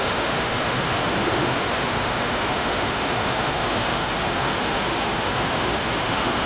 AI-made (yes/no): yes